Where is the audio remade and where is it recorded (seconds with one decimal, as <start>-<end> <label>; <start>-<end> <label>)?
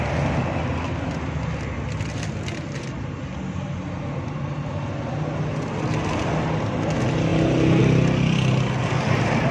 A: 0.0-9.5 recorded